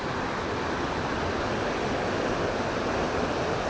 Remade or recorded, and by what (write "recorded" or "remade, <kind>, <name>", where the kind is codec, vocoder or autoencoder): recorded